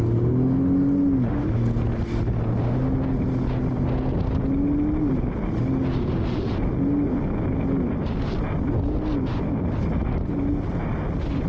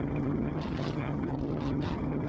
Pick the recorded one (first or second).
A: first